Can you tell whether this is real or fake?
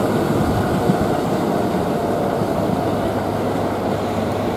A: real